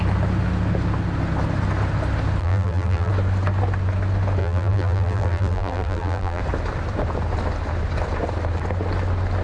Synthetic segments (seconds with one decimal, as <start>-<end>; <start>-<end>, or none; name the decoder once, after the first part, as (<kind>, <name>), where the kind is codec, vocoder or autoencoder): 2.4-3.1 (vocoder, BigVGAN v2); 4.4-6.4